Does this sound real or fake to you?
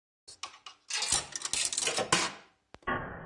real